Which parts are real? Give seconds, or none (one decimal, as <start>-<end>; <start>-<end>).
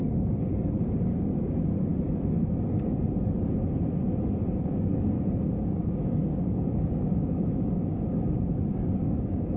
1.9-4.6